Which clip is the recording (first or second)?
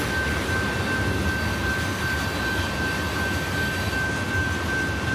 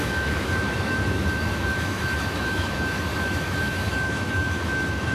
first